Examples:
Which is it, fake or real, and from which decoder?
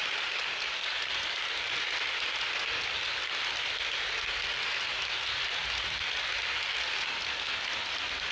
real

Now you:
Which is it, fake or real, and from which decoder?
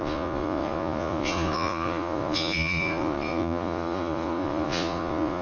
fake, vocoder, Vocos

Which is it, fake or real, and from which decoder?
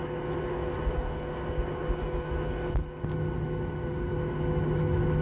real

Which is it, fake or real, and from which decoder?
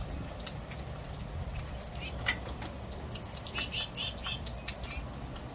real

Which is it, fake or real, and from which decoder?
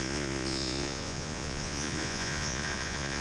fake, vocoder, Vocos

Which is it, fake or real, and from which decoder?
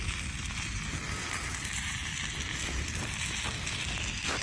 real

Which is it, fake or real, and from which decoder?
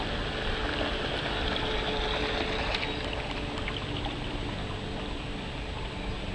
real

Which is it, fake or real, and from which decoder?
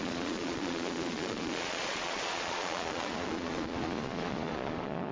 fake, vocoder, Vocos